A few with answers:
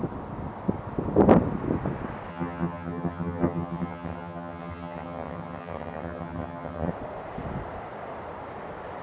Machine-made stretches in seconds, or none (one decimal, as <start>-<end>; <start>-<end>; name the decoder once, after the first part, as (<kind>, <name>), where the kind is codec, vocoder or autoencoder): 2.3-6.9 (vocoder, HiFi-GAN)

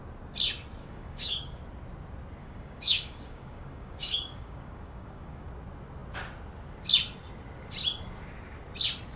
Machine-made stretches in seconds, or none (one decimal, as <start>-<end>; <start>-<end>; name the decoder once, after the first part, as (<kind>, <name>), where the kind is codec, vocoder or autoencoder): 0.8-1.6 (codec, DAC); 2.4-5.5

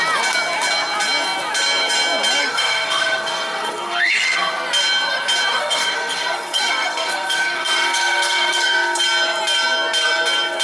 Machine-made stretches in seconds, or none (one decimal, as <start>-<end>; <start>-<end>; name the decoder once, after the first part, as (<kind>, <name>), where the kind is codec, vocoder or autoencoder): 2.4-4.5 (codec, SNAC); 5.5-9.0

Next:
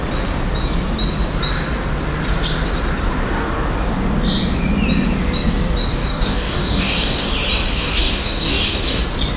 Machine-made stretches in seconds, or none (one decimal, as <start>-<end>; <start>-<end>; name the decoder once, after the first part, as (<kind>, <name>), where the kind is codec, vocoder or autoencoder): 5.9-7.3 (codec, DAC); 7.7-9.0

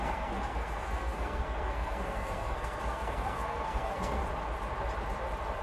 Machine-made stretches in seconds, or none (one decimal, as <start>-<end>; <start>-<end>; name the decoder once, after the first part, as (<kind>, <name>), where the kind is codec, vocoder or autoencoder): 0.0-4.2 (codec, SNAC)

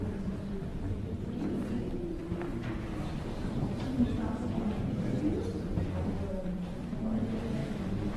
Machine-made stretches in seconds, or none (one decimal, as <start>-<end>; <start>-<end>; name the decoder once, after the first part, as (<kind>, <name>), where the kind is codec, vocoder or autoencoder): 0.0-8.2 (vocoder, BigVGAN v2)

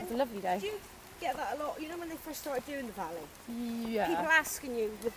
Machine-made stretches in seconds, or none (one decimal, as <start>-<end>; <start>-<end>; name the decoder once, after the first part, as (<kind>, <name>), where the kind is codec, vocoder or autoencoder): none

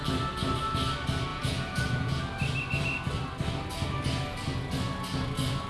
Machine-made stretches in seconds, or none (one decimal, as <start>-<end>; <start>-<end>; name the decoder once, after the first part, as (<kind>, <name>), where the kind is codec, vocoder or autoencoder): 1.3-2.2 (vocoder, Vocos)